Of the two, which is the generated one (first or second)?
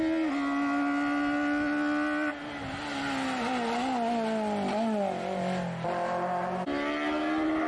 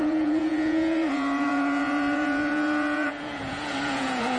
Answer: second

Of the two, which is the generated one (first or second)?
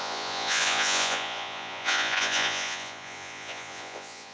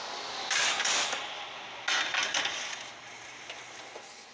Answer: first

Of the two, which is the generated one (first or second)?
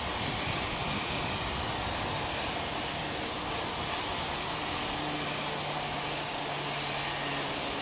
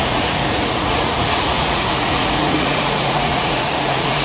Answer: second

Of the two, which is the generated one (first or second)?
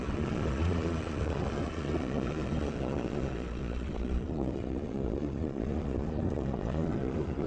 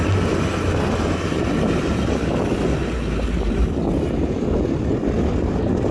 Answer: first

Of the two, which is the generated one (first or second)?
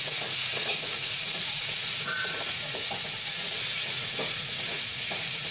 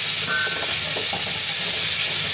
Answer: first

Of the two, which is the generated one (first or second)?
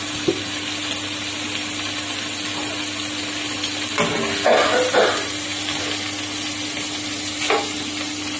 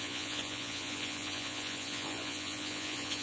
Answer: second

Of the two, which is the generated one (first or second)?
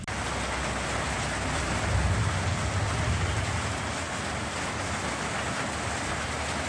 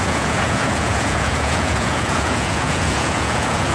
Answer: second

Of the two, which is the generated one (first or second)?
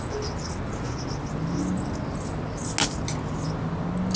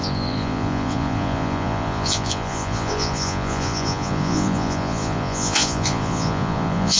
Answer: second